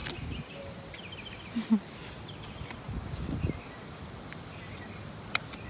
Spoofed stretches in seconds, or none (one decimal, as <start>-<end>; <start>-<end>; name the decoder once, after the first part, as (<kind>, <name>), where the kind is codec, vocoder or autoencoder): none